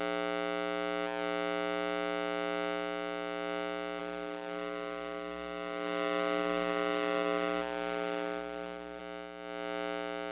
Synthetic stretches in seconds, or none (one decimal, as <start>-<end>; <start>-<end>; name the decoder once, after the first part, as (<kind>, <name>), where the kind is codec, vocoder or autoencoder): 4.0-9.0 (codec, DAC)